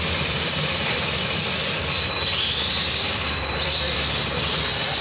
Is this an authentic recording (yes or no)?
no